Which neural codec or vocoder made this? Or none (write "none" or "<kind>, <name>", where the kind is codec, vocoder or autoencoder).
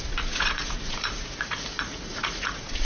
vocoder, Vocos